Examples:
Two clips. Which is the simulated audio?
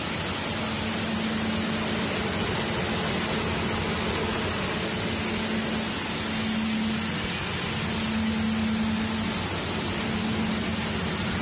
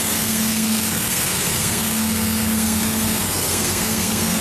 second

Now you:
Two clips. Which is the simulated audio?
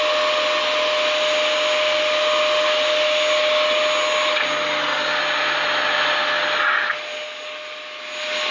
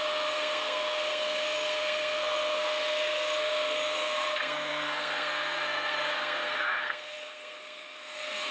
second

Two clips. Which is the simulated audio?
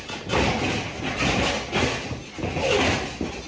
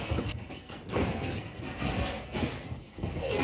second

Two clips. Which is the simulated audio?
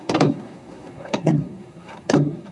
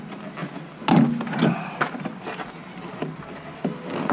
first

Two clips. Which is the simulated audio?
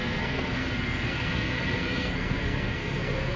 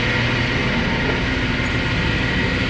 first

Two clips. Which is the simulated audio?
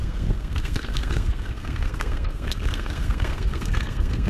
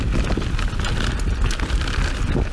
first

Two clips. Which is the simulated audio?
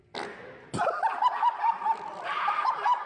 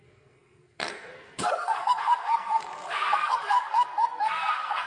second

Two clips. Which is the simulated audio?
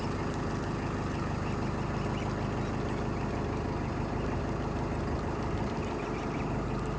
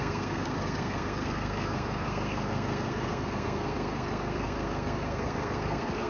second